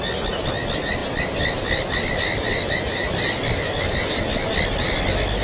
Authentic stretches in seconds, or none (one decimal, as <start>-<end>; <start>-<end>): 0.0-5.4